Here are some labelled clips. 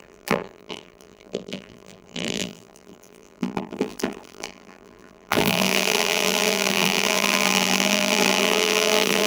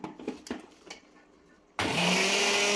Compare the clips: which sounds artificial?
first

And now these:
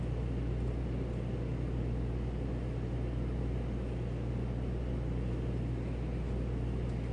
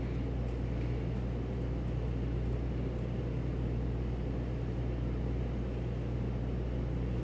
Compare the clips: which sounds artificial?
second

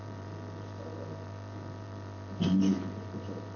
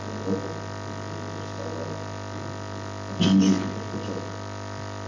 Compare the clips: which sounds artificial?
first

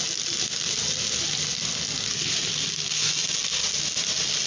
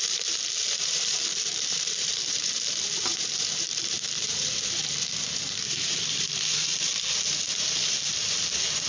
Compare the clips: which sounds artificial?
second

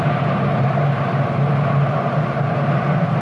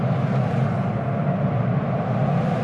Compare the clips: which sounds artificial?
first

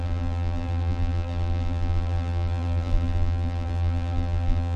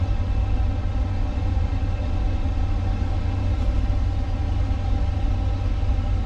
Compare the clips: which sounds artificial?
first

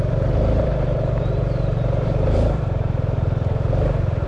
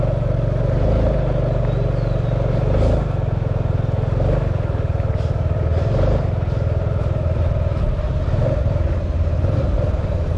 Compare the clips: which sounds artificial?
first